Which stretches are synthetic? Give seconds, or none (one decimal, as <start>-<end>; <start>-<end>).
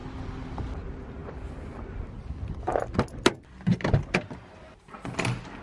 none